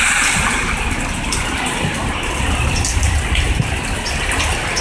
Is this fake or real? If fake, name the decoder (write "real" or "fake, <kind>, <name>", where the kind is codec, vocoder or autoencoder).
real